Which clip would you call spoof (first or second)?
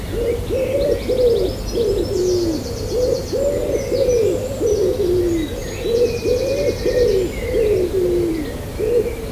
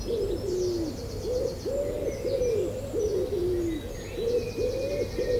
first